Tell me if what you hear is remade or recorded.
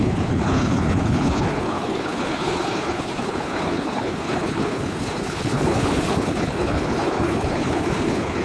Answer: remade